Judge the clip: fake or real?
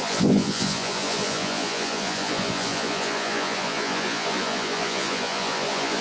fake